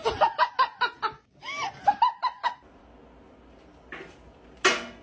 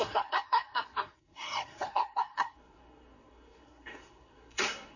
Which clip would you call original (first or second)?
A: first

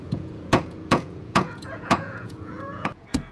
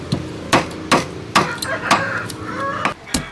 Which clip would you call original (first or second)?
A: second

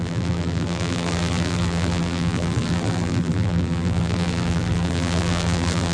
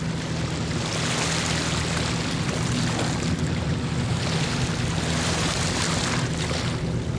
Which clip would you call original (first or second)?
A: second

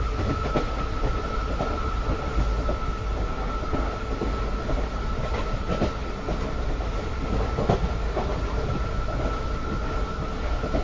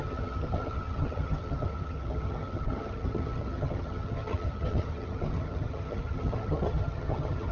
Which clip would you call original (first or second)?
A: first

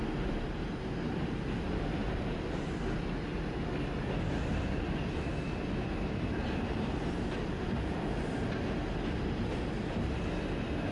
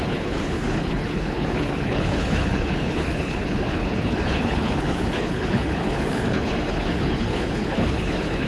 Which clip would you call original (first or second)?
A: first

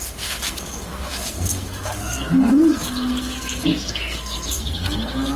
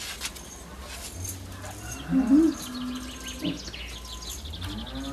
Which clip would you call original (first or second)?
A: second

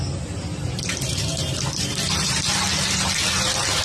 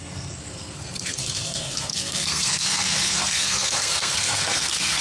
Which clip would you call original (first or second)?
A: first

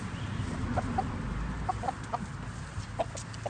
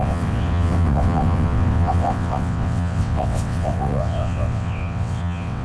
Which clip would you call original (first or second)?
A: first